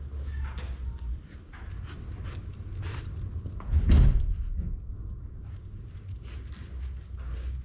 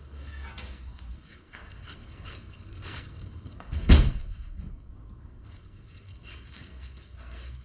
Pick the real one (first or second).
first